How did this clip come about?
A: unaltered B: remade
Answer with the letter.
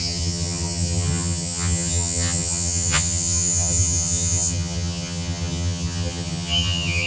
B